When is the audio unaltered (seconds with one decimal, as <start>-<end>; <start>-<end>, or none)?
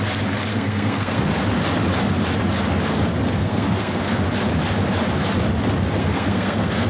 0.0-0.5; 1.2-3.4; 4.2-6.0